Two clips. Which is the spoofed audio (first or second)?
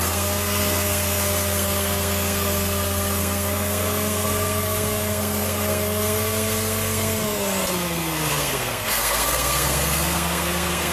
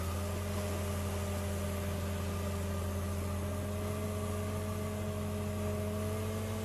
first